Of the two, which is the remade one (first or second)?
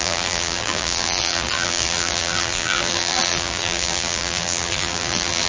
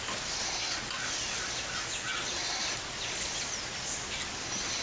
first